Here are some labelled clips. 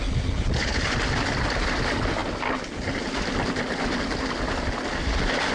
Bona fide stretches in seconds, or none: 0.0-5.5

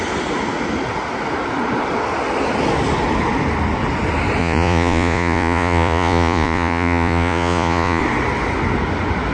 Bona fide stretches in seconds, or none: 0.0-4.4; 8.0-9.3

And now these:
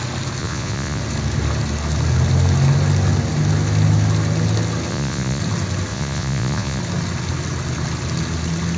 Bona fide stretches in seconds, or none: 0.0-0.4; 1.0-4.9; 5.4-5.9; 6.8-8.8